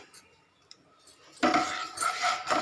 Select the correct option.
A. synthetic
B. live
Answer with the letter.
B